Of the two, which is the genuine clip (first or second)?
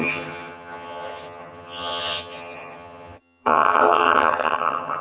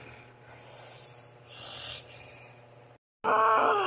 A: second